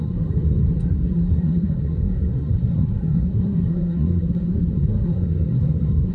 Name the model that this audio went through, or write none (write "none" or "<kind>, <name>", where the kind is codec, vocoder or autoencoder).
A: codec, SNAC